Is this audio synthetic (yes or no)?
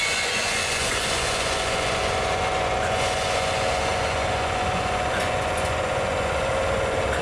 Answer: yes